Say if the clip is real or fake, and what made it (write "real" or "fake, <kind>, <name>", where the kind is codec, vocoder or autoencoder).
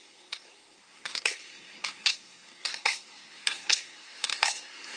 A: fake, codec, SNAC